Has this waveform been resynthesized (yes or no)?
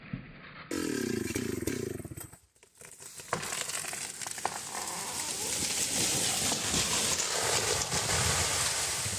no